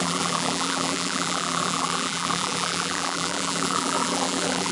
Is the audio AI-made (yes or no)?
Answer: yes